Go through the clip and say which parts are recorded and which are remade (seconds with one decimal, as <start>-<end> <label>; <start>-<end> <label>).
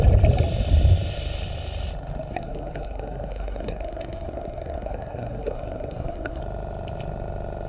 0.0-2.3 recorded; 2.3-6.4 remade; 6.4-7.7 recorded